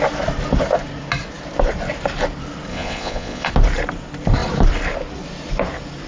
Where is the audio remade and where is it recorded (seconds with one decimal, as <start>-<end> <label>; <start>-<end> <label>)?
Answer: 0.0-2.7 recorded; 2.7-3.5 remade; 3.5-6.1 recorded